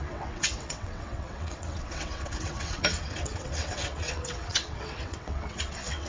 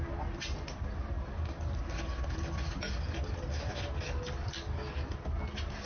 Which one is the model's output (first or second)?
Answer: first